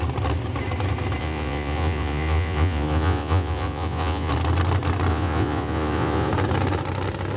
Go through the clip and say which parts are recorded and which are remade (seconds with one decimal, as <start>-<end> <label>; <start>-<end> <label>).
0.0-1.2 recorded; 1.2-4.3 remade; 4.3-5.1 recorded; 5.1-6.3 remade; 6.3-7.4 recorded